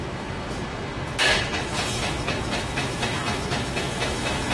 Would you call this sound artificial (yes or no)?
yes